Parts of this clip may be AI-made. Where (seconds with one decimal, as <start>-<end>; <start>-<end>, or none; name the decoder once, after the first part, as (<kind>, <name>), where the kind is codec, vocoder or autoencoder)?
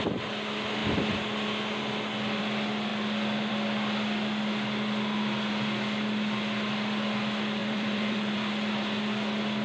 7.6-8.5 (vocoder, BigVGAN v2)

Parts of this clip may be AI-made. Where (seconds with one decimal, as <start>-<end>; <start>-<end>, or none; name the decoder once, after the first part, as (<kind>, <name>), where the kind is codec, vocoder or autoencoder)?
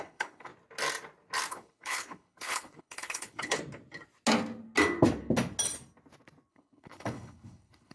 0.0-0.5 (codec, HILCodec); 1.5-3.6; 6.5-7.9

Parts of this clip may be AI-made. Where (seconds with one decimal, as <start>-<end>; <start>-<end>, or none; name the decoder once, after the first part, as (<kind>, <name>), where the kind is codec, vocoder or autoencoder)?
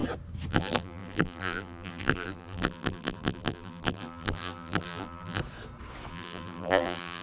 0.5-5.4 (vocoder, BigVGAN v2); 6.1-7.2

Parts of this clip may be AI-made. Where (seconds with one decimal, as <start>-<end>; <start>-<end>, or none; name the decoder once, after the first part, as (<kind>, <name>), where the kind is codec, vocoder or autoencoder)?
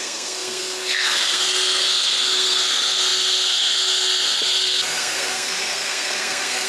0.0-6.7 (codec, SNAC)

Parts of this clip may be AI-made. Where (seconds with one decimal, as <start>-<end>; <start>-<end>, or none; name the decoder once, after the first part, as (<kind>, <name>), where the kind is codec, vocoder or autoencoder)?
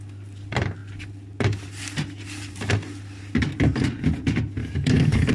4.6-5.3 (codec, DAC)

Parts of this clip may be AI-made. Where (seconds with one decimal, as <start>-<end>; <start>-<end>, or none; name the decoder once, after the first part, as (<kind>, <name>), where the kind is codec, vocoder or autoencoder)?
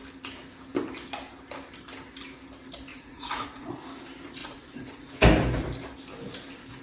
2.9-3.8 (vocoder, Vocos); 4.4-5.1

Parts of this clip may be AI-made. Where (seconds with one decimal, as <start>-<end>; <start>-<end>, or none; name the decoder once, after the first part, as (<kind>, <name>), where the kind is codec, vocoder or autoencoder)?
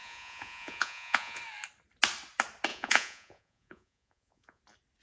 0.0-1.4 (vocoder, Vocos); 2.7-4.6